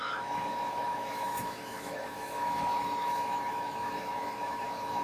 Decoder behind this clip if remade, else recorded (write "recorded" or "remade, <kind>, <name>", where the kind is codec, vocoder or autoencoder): remade, autoencoder, DAC-VAE